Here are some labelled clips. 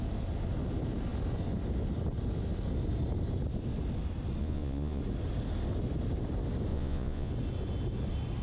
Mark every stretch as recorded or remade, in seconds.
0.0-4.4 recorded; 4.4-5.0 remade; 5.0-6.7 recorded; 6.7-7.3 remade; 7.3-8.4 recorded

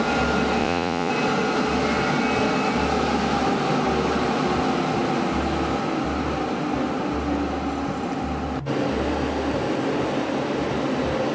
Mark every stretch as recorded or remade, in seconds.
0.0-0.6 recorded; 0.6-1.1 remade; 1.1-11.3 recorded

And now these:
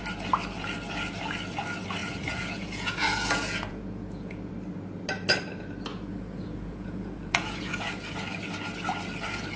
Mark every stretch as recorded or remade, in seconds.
0.0-2.0 recorded; 2.0-4.5 remade; 4.5-5.9 recorded; 5.9-7.9 remade; 7.9-9.6 recorded

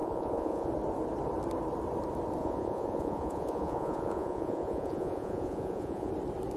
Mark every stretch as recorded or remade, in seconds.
0.0-0.7 remade; 0.7-2.4 recorded; 2.4-6.1 remade; 6.1-6.6 recorded

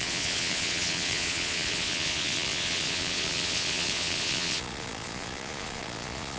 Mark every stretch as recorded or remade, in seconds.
0.0-6.4 remade